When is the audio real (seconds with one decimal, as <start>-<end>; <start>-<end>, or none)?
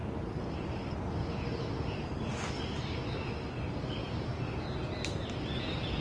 3.0-4.0; 4.8-6.0